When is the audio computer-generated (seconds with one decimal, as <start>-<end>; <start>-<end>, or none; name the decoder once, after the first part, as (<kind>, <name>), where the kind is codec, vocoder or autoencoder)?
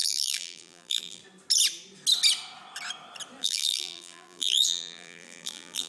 0.0-1.2 (vocoder, BigVGAN v2); 3.4-5.9